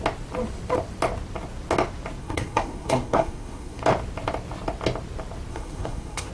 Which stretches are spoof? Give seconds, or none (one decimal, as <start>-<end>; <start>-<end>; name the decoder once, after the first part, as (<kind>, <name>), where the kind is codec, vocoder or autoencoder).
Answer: 2.2-3.8 (codec, SNAC); 5.5-6.3